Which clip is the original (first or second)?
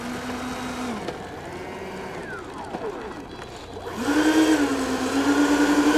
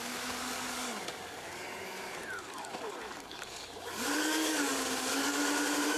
first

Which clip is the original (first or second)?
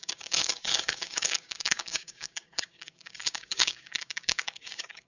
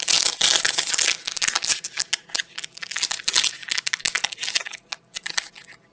second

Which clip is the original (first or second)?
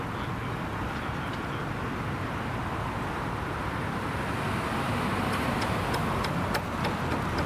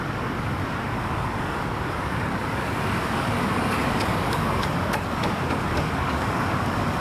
first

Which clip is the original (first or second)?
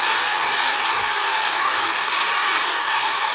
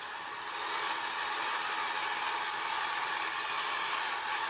second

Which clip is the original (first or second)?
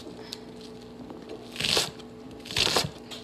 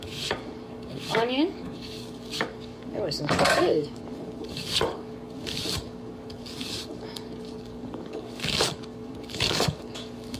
first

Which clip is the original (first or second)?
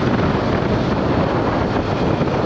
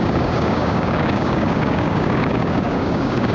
first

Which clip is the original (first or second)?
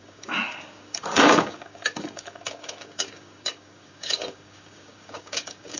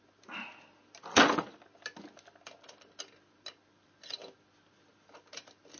second